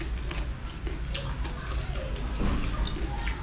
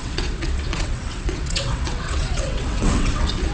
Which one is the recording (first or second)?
first